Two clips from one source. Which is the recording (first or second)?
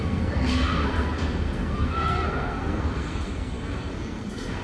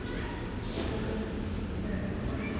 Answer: second